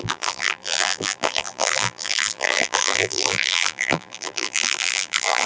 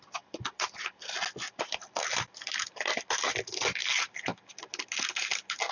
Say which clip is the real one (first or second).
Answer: second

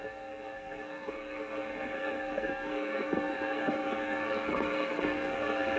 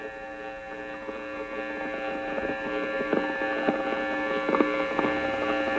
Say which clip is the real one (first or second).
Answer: second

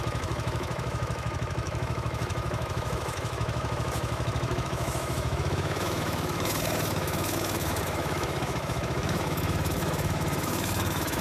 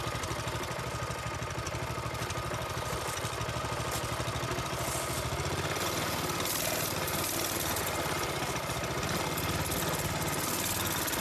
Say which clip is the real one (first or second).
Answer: second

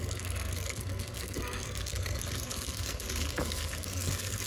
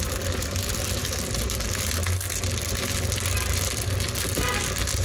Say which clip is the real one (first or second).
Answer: second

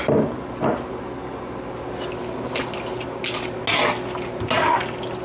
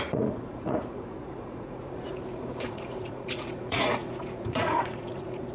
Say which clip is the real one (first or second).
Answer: first